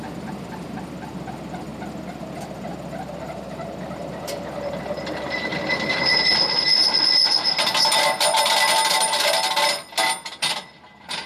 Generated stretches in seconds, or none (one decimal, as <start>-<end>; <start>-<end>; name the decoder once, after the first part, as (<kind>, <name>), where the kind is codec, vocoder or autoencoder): none